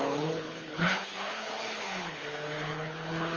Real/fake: fake